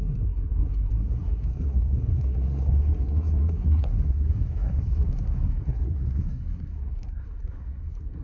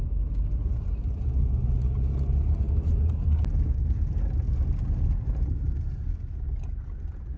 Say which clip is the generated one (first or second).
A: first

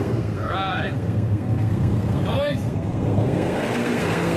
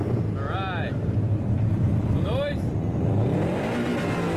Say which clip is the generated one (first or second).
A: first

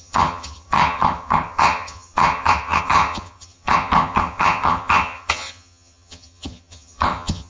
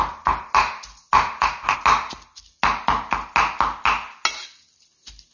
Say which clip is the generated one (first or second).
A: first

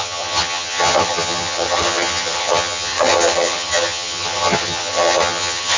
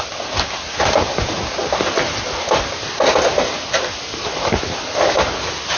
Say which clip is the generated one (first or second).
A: first